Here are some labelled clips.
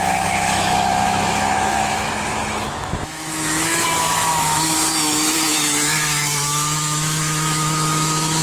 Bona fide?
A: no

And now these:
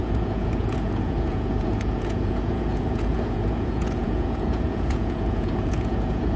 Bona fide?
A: no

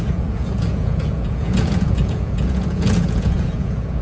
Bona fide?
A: no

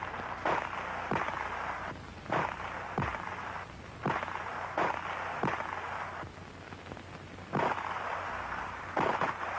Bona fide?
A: yes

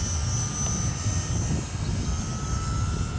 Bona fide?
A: yes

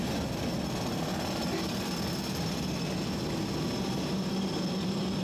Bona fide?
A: yes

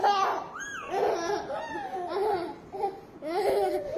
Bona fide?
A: yes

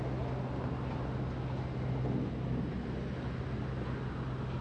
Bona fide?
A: yes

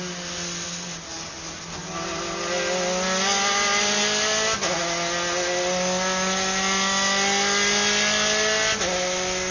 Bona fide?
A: yes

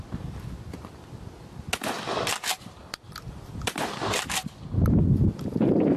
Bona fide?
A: yes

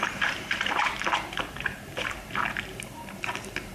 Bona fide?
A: no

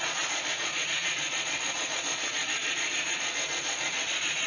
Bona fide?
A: no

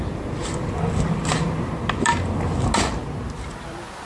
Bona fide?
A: yes